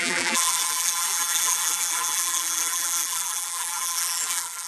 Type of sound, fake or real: fake